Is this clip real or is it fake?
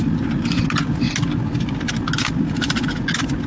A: real